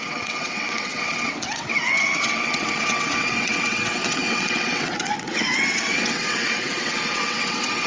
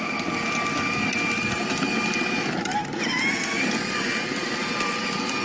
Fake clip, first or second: first